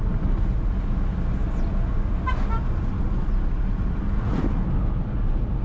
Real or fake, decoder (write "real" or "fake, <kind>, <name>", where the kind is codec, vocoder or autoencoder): real